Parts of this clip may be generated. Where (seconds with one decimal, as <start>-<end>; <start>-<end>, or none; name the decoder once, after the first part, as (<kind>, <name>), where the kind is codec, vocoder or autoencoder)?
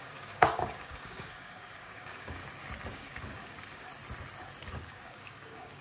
0.0-2.4 (codec, DAC); 2.9-3.9; 4.7-5.8